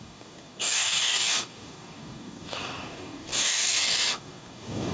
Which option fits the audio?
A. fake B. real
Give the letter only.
A